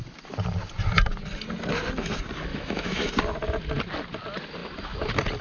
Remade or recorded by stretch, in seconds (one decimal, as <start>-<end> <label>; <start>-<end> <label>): 0.0-2.5 recorded; 2.5-3.1 remade; 3.1-5.4 recorded